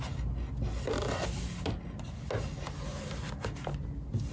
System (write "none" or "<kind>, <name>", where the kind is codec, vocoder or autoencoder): none